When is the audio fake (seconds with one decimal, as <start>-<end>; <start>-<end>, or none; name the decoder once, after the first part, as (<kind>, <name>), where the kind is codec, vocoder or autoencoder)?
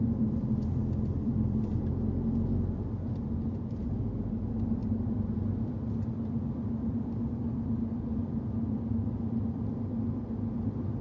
0.8-1.9 (vocoder, BigVGAN v2); 4.8-9.7